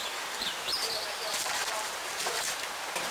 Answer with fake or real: fake